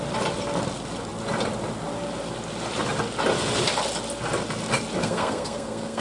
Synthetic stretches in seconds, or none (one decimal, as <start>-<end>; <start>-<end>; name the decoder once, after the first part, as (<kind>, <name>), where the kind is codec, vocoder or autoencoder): 5.0-6.0 (codec, SNAC)